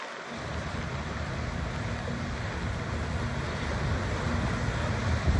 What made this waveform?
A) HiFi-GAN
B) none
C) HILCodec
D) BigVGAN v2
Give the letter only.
B